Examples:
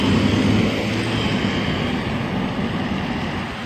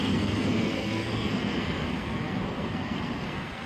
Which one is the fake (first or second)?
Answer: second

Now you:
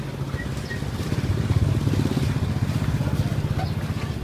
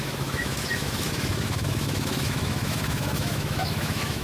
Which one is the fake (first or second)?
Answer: second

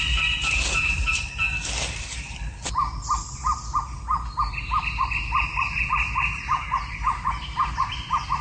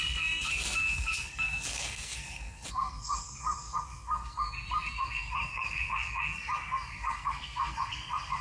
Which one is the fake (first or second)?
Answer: second